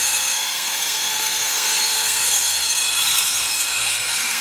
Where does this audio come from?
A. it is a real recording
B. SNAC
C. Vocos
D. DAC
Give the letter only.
B